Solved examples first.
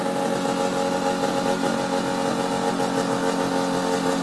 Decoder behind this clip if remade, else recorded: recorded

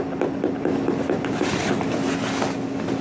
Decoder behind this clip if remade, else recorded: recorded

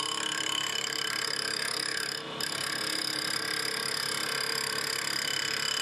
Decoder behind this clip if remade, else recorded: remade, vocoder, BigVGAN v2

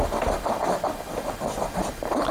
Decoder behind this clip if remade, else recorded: recorded